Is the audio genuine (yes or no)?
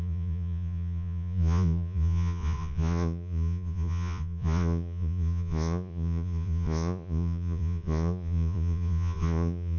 no